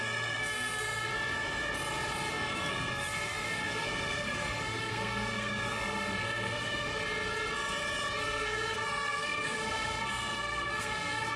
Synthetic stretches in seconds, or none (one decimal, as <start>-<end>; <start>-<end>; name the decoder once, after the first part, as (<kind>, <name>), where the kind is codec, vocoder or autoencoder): 0.0-1.1 (codec, SNAC); 2.3-6.9; 8.2-11.4